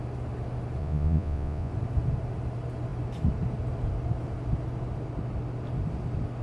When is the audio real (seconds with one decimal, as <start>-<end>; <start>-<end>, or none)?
0.0-0.8; 1.7-6.4